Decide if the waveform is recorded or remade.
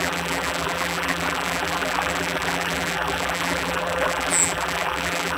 remade